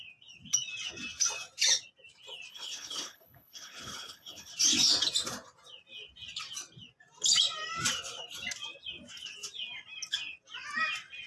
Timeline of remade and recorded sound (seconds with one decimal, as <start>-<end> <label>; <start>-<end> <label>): 0.0-2.5 recorded; 2.5-4.5 remade; 4.5-11.3 recorded